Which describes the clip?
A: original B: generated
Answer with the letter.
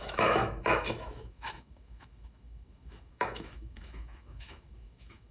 B